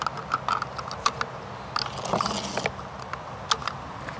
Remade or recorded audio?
recorded